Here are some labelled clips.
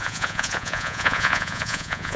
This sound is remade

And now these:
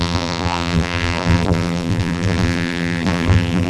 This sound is remade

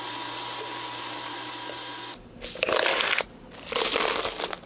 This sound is recorded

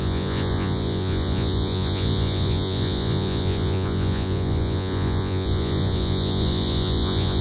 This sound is remade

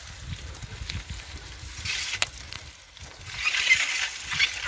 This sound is recorded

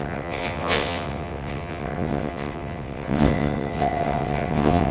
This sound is remade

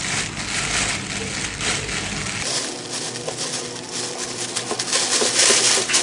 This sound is recorded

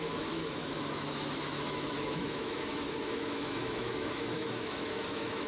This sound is remade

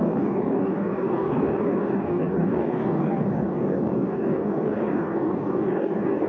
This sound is remade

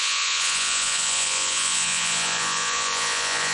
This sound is remade